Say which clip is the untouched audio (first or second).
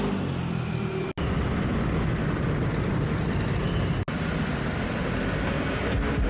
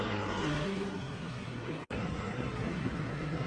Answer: first